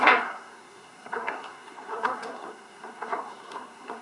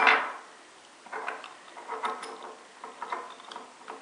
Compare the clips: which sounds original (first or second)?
second